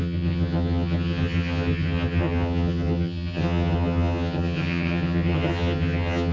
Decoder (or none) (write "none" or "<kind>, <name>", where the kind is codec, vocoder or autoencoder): vocoder, HiFi-GAN